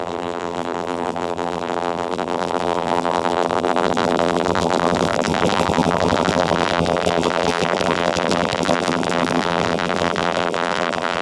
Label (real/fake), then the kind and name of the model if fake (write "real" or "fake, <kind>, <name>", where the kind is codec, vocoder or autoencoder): fake, vocoder, BigVGAN v2